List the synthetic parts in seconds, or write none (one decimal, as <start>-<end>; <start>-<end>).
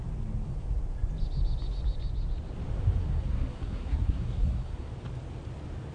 3.0-4.9